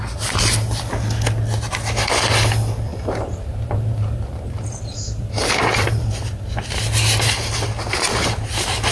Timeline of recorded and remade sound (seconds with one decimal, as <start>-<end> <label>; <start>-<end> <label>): 0.0-2.9 recorded; 2.9-6.7 remade; 6.7-8.9 recorded